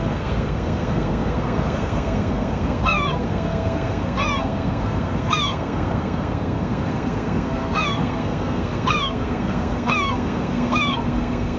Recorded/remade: remade